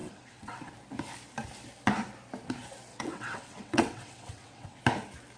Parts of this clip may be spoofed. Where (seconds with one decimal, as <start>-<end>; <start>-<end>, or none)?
0.0-0.7; 2.9-4.8